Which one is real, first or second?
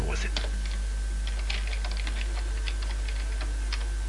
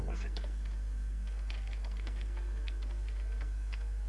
first